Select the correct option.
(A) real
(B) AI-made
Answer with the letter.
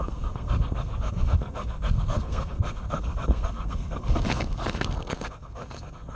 B